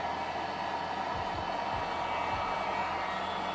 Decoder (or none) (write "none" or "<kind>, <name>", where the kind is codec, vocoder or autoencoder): none